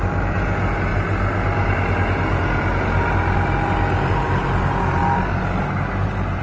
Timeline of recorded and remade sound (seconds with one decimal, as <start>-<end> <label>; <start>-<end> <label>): 0.0-6.4 recorded